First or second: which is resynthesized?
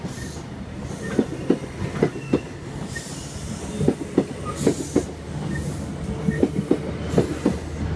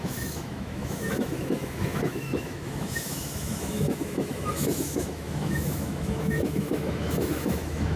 second